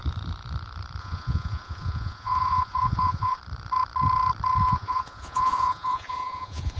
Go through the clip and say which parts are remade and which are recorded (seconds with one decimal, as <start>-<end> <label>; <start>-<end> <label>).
0.0-1.0 recorded; 1.0-3.4 remade; 3.4-4.6 recorded; 4.6-6.8 remade